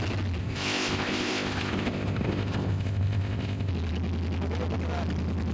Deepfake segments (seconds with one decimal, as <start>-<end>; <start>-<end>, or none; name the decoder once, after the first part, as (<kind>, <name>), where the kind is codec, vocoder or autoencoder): 0.4-3.7 (codec, ZipCodec)